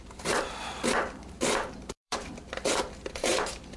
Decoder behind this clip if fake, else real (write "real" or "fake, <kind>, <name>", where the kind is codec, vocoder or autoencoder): fake, vocoder, BigVGAN v2